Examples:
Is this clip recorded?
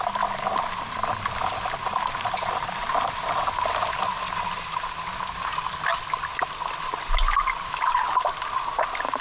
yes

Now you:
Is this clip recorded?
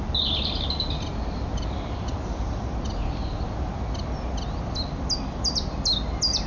yes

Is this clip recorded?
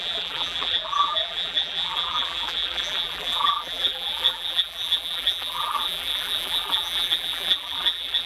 no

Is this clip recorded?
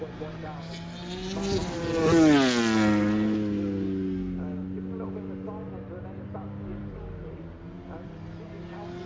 yes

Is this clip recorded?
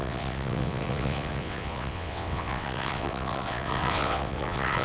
no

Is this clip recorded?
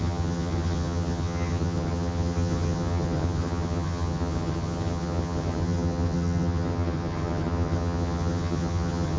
no